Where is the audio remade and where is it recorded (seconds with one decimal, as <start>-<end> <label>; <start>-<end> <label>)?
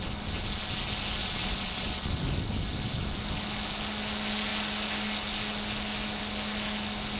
0.0-1.2 recorded; 1.2-2.1 remade; 2.1-7.2 recorded